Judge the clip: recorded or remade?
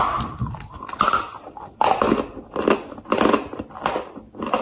recorded